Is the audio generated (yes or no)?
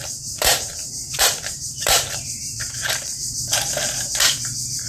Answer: yes